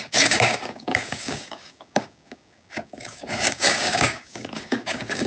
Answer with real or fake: fake